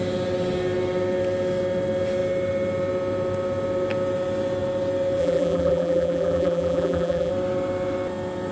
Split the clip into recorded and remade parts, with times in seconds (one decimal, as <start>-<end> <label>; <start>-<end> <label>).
0.0-5.2 recorded; 5.2-7.3 remade; 7.3-8.5 recorded